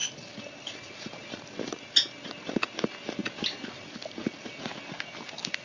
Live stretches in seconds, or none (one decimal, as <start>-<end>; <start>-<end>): 0.0-5.6

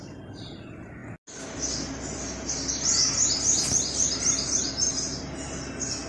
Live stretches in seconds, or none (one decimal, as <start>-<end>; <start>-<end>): 0.0-6.1